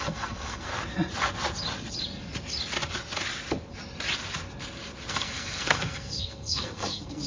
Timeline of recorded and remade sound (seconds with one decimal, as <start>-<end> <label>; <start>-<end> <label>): 0.0-0.7 remade; 0.7-5.1 recorded; 5.1-7.3 remade